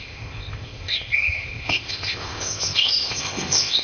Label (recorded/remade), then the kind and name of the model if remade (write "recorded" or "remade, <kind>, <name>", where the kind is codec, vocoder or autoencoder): remade, codec, ZipCodec